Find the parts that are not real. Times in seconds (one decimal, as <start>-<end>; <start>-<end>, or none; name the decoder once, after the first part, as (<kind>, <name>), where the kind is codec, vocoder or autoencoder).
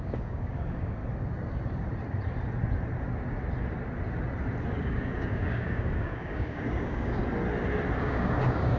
0.0-1.0 (codec, DAC); 4.8-7.2; 8.0-8.8